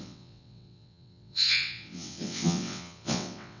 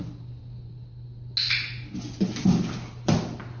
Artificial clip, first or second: first